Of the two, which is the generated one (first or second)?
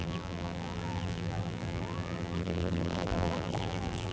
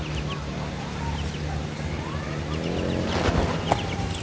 first